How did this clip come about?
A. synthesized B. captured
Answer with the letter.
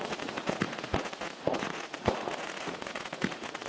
A